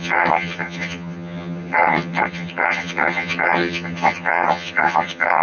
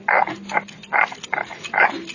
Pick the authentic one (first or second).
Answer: second